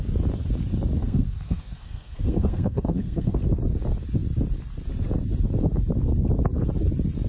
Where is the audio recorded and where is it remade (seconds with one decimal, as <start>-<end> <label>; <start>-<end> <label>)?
0.0-1.0 recorded; 1.0-3.4 remade; 3.4-7.3 recorded